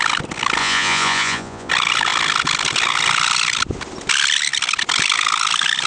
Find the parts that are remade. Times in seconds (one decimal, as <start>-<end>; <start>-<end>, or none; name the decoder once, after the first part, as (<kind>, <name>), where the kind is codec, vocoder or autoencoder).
0.6-1.7 (vocoder, Vocos)